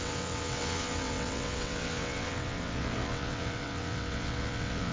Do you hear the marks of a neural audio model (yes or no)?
yes